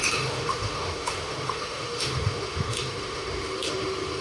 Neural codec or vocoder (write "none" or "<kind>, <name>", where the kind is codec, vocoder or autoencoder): autoencoder, DAC-VAE